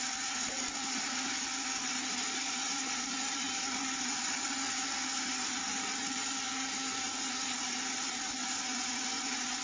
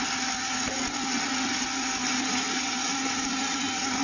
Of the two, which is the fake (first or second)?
first